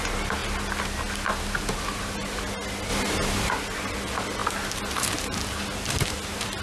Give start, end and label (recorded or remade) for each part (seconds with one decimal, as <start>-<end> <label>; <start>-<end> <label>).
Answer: 0.0-6.6 recorded